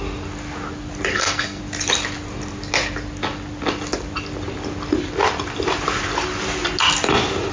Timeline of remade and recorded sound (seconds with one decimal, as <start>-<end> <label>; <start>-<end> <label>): 0.0-1.1 recorded; 1.1-1.6 remade; 1.6-7.5 recorded